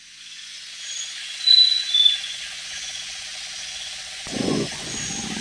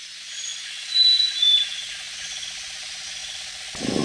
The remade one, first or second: first